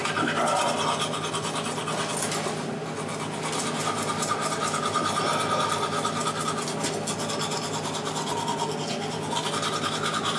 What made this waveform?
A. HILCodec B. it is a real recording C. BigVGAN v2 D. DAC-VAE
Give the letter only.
B